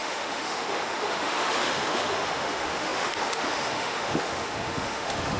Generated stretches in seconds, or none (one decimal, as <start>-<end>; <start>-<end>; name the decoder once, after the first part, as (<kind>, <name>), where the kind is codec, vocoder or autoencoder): 0.0-5.4 (autoencoder, DAC-VAE)